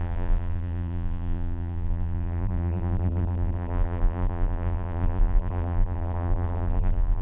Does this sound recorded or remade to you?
remade